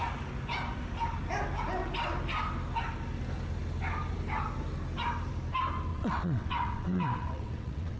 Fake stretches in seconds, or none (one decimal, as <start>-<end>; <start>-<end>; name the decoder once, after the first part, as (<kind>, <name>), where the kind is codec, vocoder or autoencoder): 5.9-8.0 (vocoder, WaveNeXt)